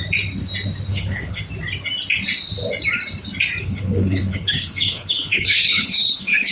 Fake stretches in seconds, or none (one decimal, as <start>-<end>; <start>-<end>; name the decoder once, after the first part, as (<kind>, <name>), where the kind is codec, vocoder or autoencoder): 0.9-1.4 (codec, HILCodec); 3.6-6.5